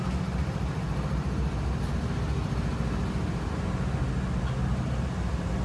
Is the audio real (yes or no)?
yes